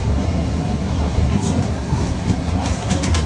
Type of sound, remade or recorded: remade